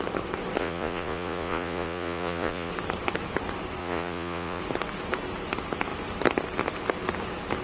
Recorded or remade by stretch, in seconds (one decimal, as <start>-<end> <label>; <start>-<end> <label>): 0.0-0.6 recorded; 0.6-2.7 remade; 2.7-3.8 recorded; 3.8-4.6 remade; 4.6-7.6 recorded